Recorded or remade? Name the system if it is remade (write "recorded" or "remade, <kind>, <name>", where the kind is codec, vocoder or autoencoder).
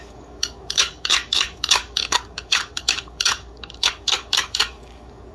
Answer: remade, codec, DAC